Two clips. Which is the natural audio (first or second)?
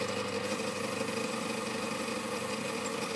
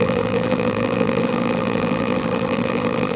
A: first